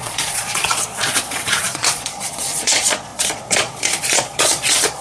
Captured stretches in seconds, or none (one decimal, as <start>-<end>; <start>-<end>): none